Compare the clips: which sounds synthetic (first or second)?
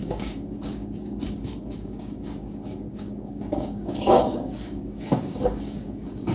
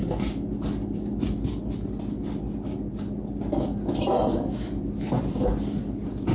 first